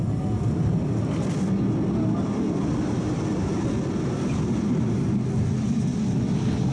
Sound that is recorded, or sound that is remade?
recorded